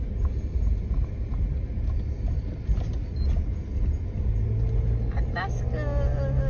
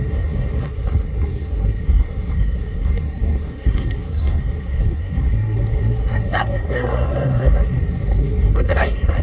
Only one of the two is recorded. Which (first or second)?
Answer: first